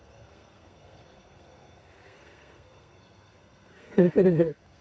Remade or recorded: remade